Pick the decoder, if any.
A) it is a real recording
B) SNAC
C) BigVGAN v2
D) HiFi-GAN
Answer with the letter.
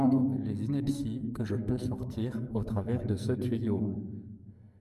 B